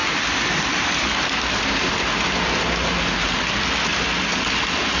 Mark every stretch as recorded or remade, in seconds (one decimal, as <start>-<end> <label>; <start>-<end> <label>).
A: 0.0-5.0 recorded